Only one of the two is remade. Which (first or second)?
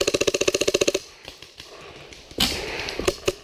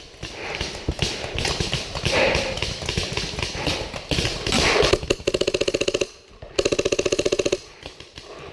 first